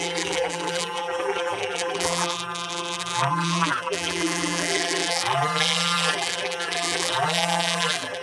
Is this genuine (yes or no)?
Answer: no